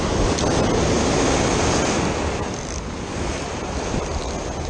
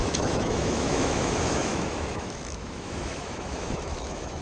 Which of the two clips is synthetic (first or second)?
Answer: second